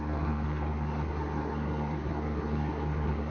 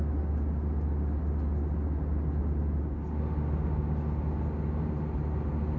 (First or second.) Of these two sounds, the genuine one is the second